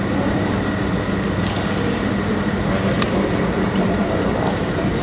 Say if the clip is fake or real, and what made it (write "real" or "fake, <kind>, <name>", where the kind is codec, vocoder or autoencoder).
real